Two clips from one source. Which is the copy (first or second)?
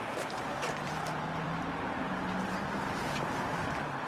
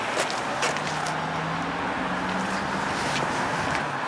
first